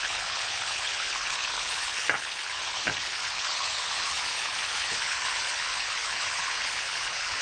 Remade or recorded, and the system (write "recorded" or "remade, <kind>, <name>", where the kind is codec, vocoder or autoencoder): remade, codec, HILCodec